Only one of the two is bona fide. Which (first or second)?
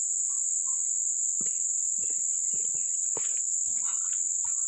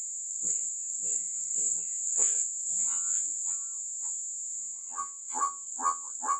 first